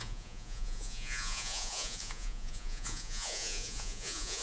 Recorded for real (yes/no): no